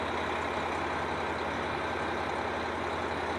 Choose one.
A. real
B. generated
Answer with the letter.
A